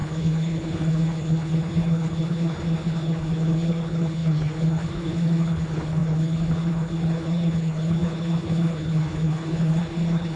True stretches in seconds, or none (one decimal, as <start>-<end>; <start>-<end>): none